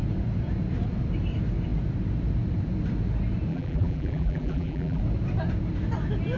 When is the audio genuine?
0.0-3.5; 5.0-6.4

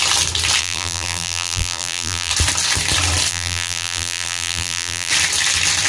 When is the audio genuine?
0.0-0.6; 2.3-3.3; 5.1-5.9

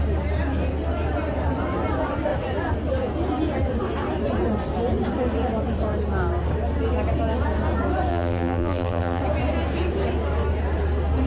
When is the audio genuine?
0.0-8.1; 9.2-11.3

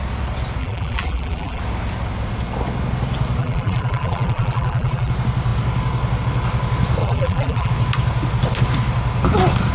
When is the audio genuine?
0.0-0.6; 1.6-3.4; 5.1-7.0; 7.7-9.7

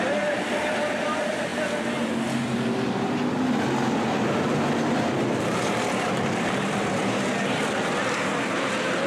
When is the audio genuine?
1.5-5.1